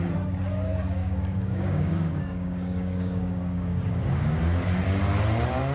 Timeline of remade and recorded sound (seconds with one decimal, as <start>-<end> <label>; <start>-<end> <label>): 0.0-1.0 recorded; 1.0-4.4 remade; 4.4-5.7 recorded